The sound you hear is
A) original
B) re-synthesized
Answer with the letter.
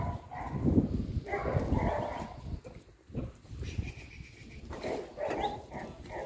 A